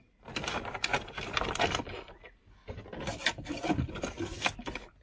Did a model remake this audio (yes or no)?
no